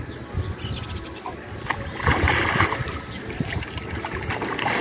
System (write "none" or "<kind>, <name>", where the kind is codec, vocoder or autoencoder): none